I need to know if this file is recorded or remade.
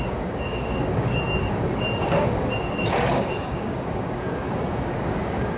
remade